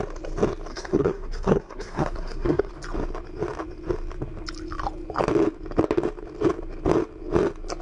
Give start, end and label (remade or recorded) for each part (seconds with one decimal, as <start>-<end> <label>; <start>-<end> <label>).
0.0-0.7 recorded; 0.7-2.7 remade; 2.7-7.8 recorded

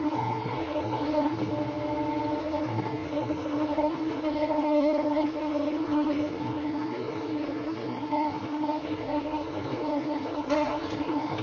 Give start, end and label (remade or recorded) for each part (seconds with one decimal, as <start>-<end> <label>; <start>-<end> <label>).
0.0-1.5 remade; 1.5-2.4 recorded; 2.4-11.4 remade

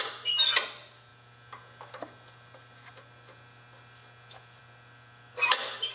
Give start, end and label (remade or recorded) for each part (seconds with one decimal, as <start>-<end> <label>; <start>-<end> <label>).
0.0-5.9 recorded